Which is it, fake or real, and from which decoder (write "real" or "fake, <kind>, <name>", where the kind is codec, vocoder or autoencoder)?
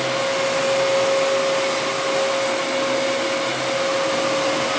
real